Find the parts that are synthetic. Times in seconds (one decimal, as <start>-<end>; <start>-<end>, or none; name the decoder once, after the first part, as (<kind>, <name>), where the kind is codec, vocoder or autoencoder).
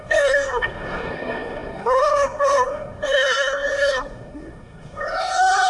0.0-5.7 (codec, SNAC)